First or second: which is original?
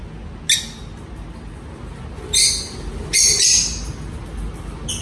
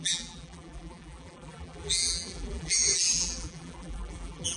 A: first